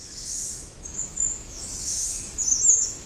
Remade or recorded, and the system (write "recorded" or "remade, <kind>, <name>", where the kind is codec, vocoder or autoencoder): remade, autoencoder, DAC-VAE